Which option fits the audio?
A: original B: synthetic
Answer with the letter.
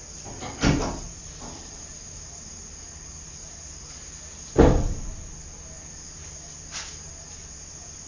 A